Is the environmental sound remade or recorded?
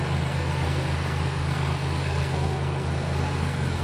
remade